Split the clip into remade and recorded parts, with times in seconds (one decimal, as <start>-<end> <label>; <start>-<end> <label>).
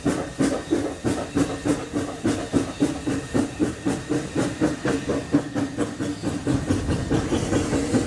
0.0-2.5 recorded; 2.5-5.4 remade; 5.4-8.1 recorded